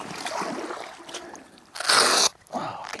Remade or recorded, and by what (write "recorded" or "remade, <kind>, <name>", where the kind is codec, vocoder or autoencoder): recorded